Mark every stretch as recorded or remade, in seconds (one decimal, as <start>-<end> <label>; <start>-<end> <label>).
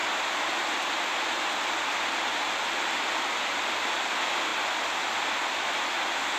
0.0-6.4 recorded